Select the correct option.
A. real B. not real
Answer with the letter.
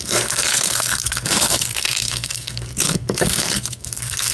B